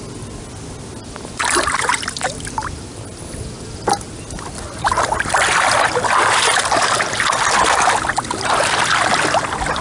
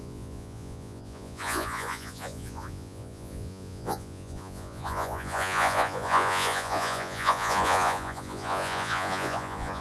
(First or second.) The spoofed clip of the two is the second